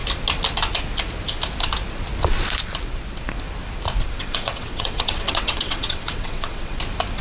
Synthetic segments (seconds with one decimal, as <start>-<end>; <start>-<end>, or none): 4.0-6.8